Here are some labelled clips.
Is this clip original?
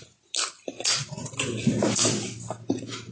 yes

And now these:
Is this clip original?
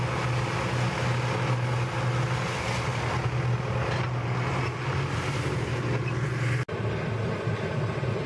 yes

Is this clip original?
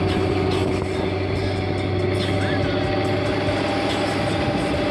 yes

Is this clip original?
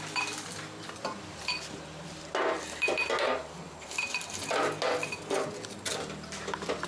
yes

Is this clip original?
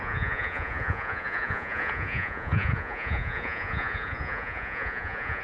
no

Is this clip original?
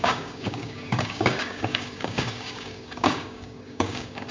no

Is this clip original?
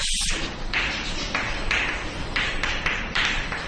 no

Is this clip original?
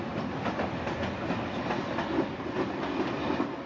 yes